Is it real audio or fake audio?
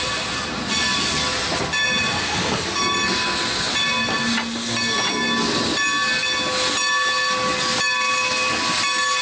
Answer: real